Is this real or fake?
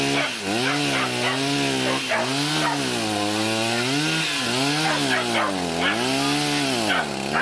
real